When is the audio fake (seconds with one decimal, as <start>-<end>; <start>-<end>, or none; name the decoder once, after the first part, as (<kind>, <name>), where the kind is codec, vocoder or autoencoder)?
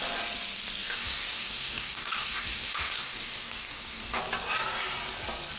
0.8-4.2 (codec, DAC)